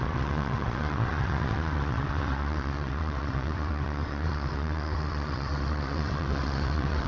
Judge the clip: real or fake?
fake